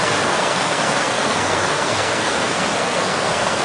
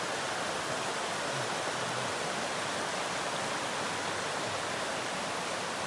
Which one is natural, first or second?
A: second